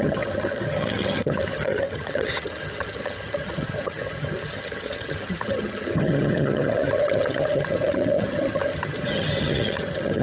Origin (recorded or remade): remade